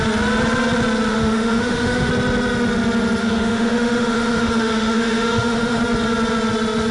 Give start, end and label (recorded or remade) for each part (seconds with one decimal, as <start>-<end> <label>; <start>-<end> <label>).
0.0-1.1 recorded; 1.1-2.1 remade; 2.1-3.2 recorded; 3.2-5.8 remade; 5.8-6.9 recorded